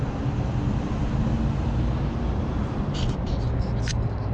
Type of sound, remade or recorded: recorded